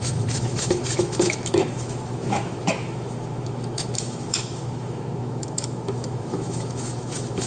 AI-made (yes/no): yes